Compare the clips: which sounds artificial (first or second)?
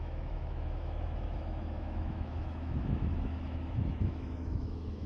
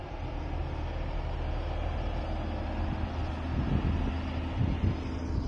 first